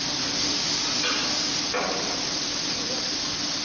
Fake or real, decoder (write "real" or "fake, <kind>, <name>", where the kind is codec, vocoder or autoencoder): real